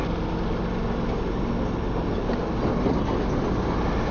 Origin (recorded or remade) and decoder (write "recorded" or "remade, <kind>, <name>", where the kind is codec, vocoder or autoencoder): recorded